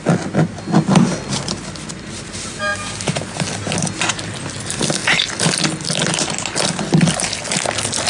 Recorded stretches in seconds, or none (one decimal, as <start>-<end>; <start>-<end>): 0.0-8.1